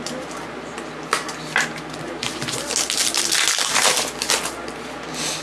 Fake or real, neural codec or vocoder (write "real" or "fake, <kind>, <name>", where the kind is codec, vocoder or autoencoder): real